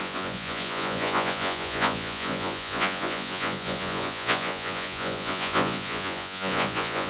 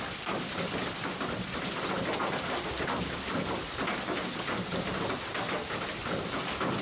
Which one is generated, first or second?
first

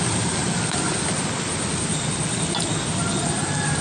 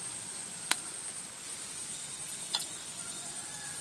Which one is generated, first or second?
second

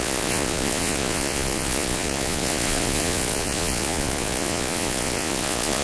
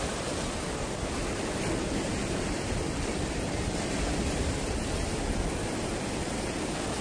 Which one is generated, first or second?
first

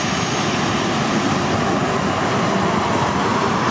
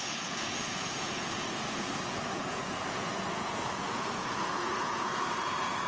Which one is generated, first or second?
second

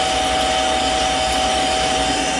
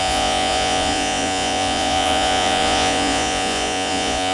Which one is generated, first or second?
second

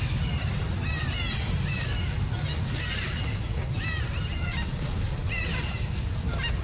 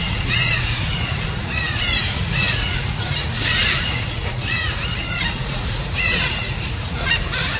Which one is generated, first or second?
second